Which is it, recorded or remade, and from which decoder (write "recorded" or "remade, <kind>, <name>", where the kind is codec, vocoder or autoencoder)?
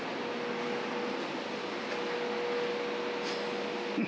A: recorded